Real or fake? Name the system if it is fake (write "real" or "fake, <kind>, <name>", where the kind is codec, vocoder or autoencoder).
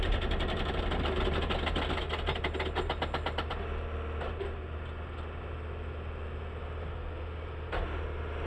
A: real